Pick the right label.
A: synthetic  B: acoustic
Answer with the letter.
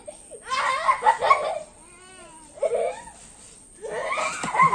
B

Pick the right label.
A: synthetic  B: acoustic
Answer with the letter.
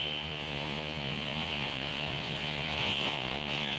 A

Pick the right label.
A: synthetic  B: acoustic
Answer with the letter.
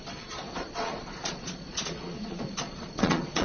A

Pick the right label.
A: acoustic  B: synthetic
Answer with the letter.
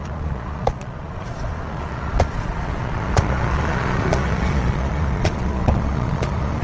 B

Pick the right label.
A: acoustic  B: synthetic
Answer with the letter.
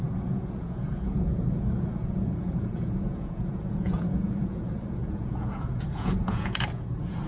B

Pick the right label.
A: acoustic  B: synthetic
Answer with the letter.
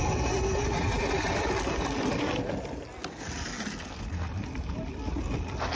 A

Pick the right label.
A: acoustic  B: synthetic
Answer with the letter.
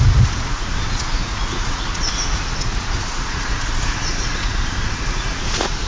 B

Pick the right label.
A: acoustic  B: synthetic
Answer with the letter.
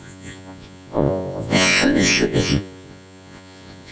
B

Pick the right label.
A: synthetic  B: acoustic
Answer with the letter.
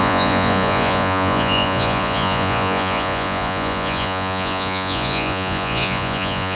A